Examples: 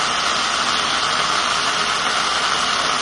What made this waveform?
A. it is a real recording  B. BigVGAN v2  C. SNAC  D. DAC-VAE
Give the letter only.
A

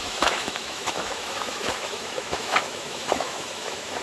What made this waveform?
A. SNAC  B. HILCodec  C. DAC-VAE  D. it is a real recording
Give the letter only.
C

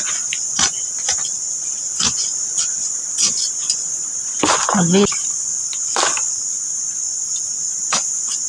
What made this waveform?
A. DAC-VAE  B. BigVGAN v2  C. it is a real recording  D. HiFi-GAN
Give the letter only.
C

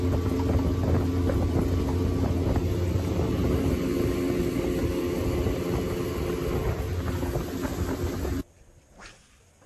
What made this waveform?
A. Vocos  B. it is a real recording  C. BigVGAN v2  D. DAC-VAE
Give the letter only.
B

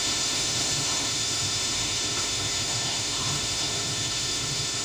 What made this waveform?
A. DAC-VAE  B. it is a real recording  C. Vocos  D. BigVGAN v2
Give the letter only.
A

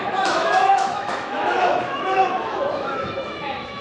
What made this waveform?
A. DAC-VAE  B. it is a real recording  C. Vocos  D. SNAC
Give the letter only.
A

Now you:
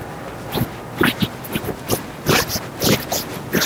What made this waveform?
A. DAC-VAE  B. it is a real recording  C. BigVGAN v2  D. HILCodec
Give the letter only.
B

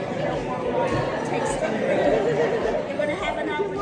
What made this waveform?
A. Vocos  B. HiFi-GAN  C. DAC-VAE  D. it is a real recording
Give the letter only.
D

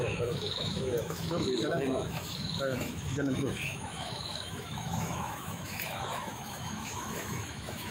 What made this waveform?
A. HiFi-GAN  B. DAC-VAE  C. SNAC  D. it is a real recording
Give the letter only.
B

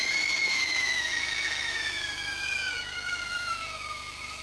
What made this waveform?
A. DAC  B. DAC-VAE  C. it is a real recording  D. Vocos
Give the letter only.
B